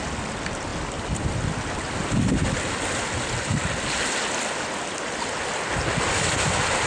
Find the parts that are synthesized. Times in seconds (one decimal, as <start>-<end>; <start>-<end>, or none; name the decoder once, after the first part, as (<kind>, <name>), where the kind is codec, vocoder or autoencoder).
none